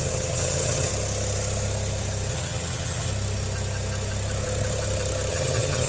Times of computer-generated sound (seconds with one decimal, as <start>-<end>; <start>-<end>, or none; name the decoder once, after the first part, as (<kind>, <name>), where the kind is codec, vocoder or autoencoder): 0.0-0.9 (vocoder, HiFi-GAN); 2.3-3.1; 5.3-5.9